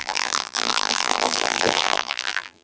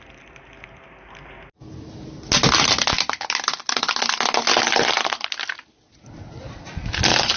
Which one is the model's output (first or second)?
first